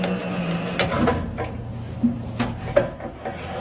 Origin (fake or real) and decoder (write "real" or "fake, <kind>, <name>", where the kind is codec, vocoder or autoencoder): real